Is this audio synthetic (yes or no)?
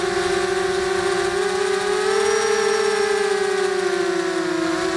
no